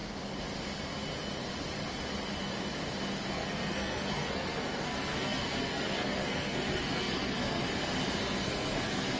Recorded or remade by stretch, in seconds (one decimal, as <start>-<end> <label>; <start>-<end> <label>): 0.0-3.3 recorded; 3.3-7.6 remade; 7.6-8.2 recorded; 8.2-9.2 remade